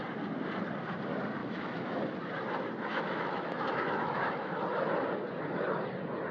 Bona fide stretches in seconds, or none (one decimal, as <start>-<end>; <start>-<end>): 0.0-1.4; 2.0-2.9; 4.5-6.3